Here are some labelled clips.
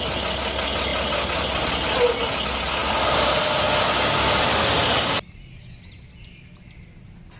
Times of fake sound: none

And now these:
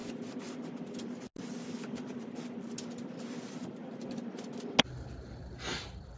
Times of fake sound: none

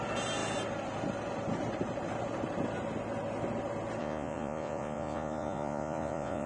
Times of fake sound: 4.0-6.5 (vocoder, Vocos)